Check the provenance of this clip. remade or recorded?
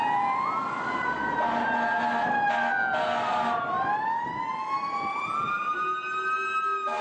recorded